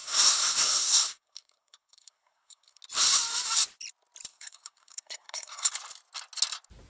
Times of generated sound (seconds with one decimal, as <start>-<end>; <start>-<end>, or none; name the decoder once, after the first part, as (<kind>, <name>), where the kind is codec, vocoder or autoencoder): 0.0-2.8 (codec, SNAC); 4.3-5.7